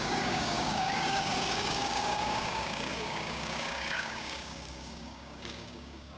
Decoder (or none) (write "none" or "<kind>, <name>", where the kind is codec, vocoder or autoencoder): codec, DAC